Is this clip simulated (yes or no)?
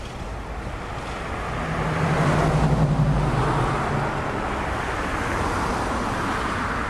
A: no